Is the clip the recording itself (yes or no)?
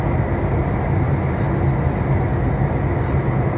yes